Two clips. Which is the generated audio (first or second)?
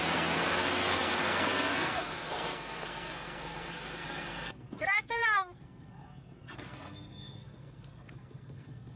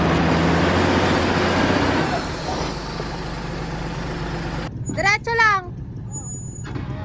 first